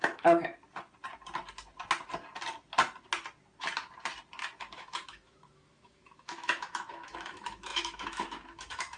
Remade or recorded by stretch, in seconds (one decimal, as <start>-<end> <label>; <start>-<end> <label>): 0.0-0.5 remade; 0.5-4.6 recorded; 4.6-9.0 remade